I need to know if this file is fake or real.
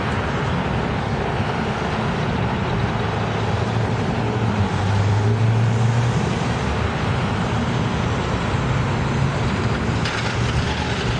real